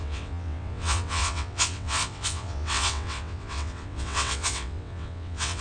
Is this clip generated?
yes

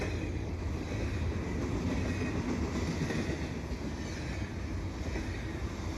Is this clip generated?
no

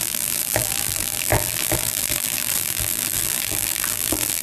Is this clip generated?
yes